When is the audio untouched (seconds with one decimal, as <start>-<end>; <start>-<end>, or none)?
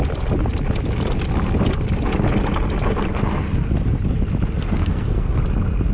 0.0-4.8; 5.4-5.9